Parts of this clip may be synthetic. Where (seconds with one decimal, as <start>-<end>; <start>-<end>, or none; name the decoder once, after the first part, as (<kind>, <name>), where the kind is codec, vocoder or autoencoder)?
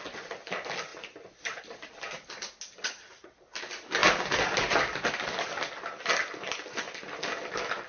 2.8-3.3 (vocoder, Vocos)